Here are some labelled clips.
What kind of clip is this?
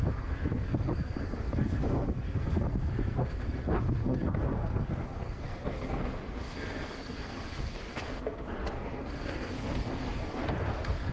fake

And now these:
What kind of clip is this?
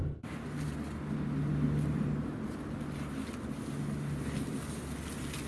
real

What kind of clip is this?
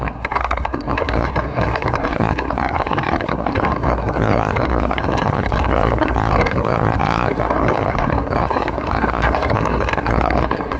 fake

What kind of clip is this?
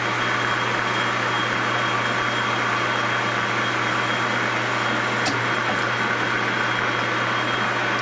real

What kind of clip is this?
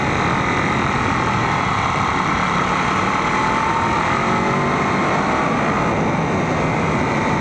real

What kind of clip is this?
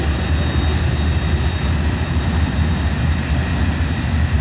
real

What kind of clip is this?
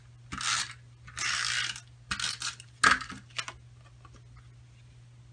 real